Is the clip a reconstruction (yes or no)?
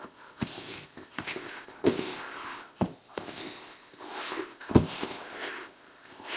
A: yes